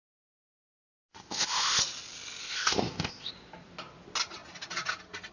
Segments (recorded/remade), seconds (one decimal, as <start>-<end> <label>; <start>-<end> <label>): 0.0-1.1 recorded; 1.1-1.8 remade; 1.8-2.4 recorded; 2.4-3.3 remade; 3.3-5.3 recorded